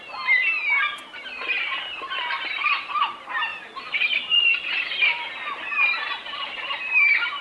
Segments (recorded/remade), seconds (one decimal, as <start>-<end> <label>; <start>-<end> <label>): 0.0-7.4 recorded